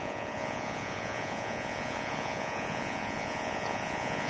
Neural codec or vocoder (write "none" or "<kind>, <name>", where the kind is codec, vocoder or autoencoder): vocoder, Vocos